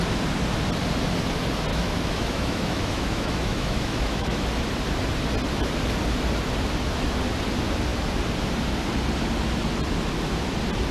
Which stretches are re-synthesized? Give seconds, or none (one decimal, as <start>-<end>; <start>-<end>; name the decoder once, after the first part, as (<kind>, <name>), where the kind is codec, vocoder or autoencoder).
1.7-4.5 (autoencoder, DAC-VAE)